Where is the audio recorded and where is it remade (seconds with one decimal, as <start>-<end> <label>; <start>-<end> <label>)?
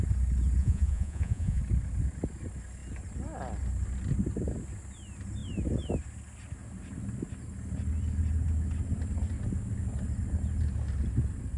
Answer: 0.0-0.6 recorded; 0.6-1.6 remade; 1.6-11.6 recorded